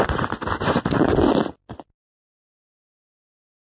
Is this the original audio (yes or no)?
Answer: yes